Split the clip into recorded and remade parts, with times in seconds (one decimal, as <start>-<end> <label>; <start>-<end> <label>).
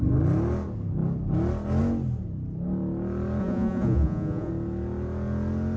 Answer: 0.0-3.4 recorded; 3.4-4.5 remade; 4.5-5.8 recorded